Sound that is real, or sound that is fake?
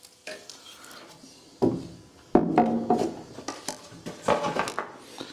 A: real